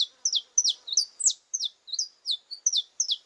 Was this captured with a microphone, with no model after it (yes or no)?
yes